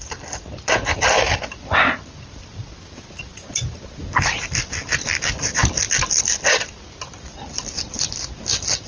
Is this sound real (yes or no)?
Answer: no